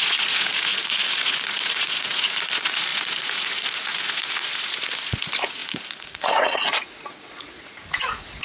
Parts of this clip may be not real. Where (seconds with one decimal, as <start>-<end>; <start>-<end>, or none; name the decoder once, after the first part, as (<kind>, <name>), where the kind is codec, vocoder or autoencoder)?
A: 0.0-8.4 (vocoder, Vocos)